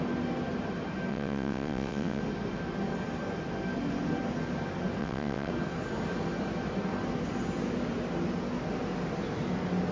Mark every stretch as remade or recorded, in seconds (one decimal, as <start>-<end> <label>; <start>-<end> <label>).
0.0-1.1 recorded; 1.1-2.2 remade; 2.2-5.0 recorded; 5.0-5.5 remade; 5.5-9.9 recorded

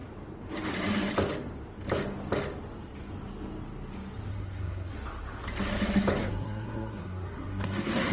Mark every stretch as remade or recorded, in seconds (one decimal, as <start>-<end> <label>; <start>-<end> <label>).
0.0-4.3 recorded; 4.3-4.9 remade; 4.9-6.2 recorded; 6.2-8.1 remade